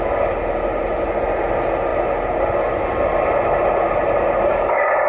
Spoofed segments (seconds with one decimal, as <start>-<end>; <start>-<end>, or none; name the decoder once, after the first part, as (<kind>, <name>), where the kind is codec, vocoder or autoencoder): 4.5-5.1 (codec, DAC)